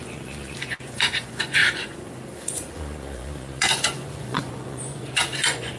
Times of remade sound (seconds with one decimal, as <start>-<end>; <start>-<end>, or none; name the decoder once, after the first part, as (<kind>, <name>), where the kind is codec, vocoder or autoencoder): 0.0-5.8 (vocoder, Vocos)